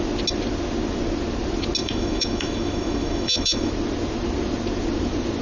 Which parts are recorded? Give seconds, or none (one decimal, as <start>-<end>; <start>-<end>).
0.0-1.8; 3.7-5.4